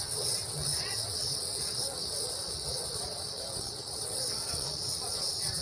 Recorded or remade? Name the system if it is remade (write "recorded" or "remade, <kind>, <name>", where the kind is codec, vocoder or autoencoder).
remade, vocoder, WaveNeXt